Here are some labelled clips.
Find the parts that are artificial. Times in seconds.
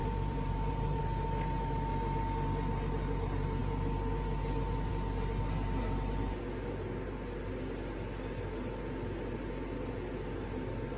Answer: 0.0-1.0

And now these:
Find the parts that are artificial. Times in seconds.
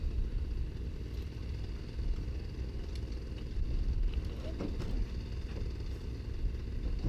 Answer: none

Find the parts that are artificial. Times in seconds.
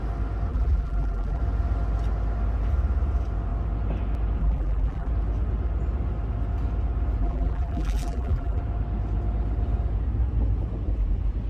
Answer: 0.5-1.4; 4.4-5.1; 7.2-8.6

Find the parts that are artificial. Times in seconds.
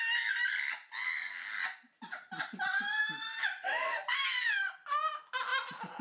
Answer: 1.6-3.0